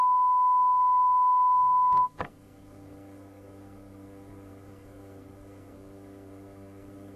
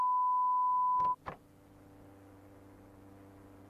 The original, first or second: second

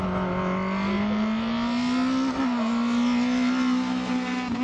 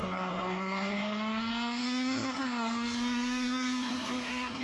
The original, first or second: first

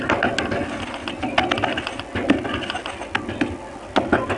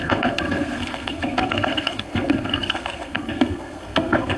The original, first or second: first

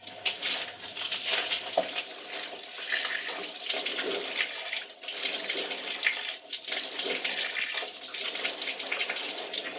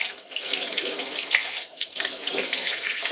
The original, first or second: first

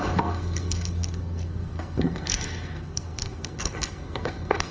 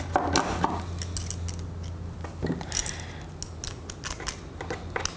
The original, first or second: second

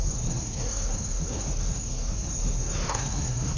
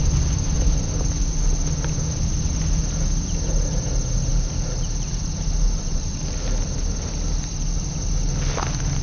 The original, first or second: second